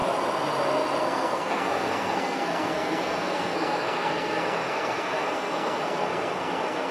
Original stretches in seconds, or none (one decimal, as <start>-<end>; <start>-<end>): 0.0-1.0